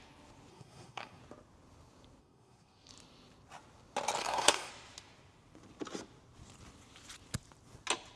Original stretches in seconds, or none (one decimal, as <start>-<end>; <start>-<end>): 0.0-0.5; 1.2-2.2; 2.9-4.2; 4.7-8.2